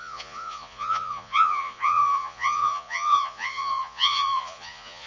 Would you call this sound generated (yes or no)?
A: yes